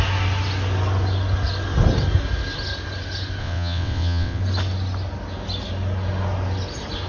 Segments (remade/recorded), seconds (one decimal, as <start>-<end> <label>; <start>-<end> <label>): 0.0-3.4 recorded; 3.4-4.4 remade; 4.4-7.1 recorded